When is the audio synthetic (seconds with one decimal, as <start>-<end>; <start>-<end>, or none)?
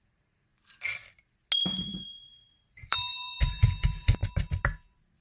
0.0-0.5; 1.6-4.2